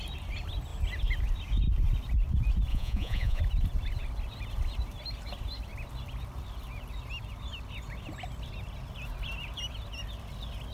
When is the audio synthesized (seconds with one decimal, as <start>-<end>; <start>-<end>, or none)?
2.7-3.4